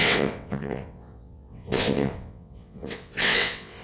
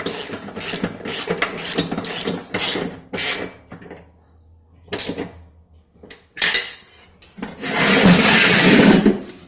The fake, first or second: first